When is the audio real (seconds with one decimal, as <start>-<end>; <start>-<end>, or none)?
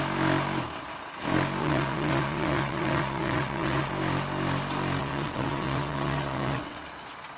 0.0-1.6; 3.9-5.0; 6.8-7.4